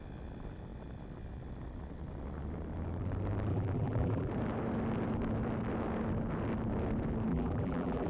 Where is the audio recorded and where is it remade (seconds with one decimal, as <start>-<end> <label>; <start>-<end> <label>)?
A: 0.0-3.5 recorded; 3.5-4.3 remade; 4.3-7.3 recorded; 7.3-8.1 remade